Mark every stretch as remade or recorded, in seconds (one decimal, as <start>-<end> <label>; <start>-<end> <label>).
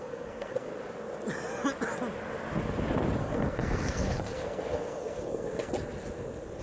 0.0-0.7 remade; 0.7-3.2 recorded; 3.2-5.7 remade; 5.7-6.6 recorded